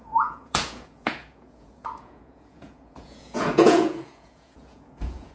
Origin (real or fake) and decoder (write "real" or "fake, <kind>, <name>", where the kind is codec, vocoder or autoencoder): fake, vocoder, Vocos